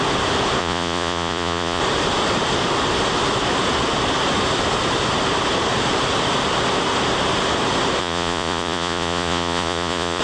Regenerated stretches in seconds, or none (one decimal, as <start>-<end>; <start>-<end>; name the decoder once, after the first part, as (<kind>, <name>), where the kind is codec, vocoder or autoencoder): 0.6-1.8 (vocoder, Vocos); 8.0-10.2